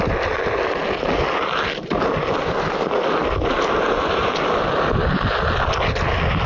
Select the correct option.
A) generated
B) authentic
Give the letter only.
B